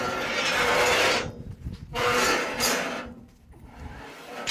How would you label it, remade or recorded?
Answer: remade